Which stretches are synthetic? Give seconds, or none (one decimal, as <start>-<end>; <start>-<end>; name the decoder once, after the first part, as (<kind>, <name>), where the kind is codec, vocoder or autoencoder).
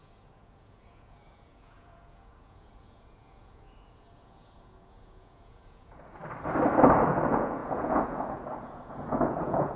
0.0-6.2 (vocoder, Vocos); 7.0-9.8